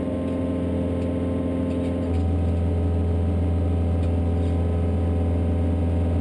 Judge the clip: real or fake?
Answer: real